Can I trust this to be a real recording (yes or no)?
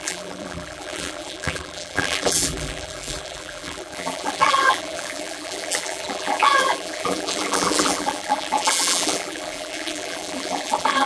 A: no